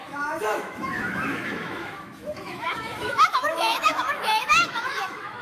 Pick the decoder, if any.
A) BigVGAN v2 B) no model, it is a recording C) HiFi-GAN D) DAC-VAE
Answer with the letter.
D